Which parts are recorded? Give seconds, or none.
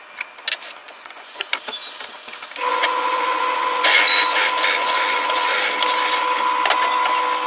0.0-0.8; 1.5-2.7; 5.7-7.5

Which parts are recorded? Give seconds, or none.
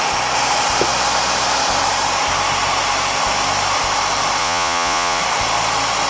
0.0-4.4; 5.2-6.1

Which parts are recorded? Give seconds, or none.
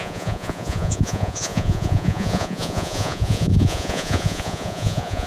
none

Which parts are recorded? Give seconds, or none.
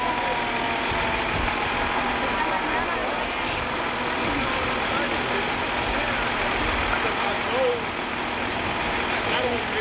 0.0-9.8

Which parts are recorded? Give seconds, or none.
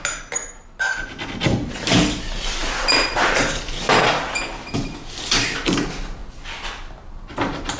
0.0-7.8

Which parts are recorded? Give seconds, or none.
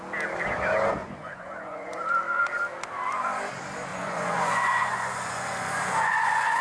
0.0-1.0; 2.0-3.9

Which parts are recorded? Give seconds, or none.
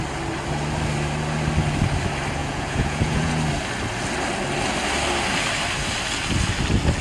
0.0-2.4; 3.3-7.0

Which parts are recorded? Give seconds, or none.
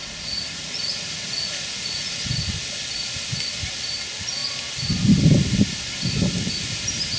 2.3-7.2